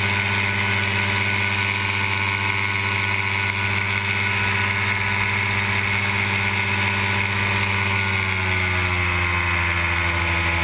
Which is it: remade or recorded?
recorded